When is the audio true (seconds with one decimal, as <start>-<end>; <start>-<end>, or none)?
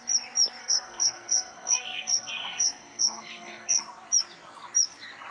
0.0-0.6; 3.8-5.3